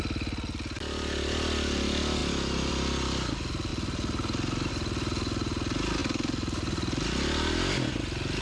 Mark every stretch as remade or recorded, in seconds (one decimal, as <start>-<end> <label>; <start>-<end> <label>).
0.0-2.2 recorded; 2.2-2.7 remade; 2.7-8.4 recorded